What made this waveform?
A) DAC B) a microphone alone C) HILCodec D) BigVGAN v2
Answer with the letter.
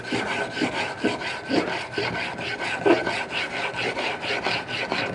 B